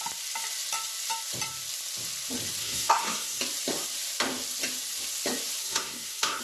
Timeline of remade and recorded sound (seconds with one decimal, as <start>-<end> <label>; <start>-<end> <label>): 0.0-2.6 recorded; 2.6-3.4 remade; 3.4-5.6 recorded; 5.6-6.4 remade

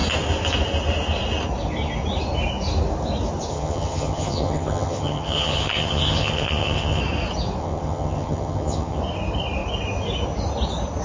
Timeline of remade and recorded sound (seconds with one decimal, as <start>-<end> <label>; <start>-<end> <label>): 0.0-3.5 recorded; 3.5-7.0 remade; 7.0-7.6 recorded; 7.6-9.0 remade; 9.0-11.0 recorded

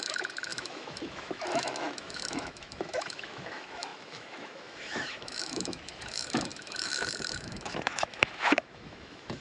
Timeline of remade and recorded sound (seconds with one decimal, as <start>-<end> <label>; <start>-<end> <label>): 0.0-9.4 remade

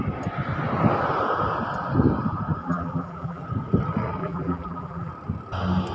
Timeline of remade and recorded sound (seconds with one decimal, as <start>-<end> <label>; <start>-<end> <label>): 0.0-2.6 recorded; 2.6-3.4 remade; 3.4-4.2 recorded; 4.2-5.1 remade; 5.1-5.9 recorded

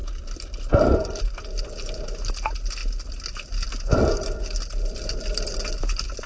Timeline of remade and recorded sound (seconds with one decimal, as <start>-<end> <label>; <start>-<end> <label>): 0.0-6.3 recorded

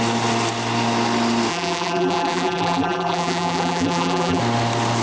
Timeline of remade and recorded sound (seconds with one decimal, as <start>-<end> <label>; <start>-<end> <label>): 0.0-1.5 recorded; 1.5-4.4 remade; 4.4-5.0 recorded

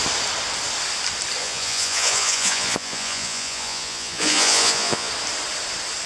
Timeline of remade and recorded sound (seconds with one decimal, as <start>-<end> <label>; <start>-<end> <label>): 0.0-1.4 recorded; 1.4-5.1 remade; 5.1-6.1 recorded